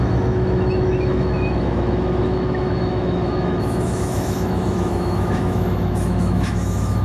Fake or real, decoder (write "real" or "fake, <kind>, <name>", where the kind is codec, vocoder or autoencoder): fake, autoencoder, DAC-VAE